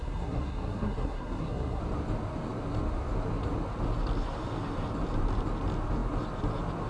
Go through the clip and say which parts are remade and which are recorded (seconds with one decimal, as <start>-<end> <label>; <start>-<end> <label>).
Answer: 0.0-1.8 remade; 1.8-6.9 recorded